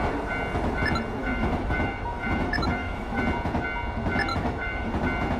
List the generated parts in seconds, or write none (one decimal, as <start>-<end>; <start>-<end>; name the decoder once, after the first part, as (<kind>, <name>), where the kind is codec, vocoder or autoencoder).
1.2-3.2 (autoencoder, DAC-VAE); 4.3-4.9